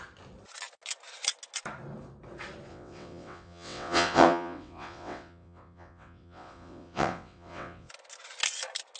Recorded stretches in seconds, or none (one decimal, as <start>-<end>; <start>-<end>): 0.0-2.7; 7.9-9.0